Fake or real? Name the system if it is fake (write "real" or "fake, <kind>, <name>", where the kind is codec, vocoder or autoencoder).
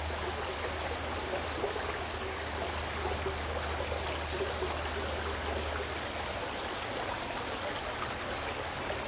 real